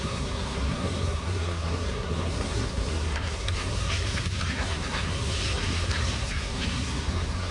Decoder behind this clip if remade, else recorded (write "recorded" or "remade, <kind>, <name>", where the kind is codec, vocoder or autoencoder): remade, codec, SNAC